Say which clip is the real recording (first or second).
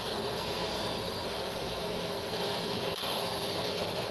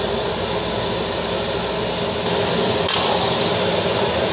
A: second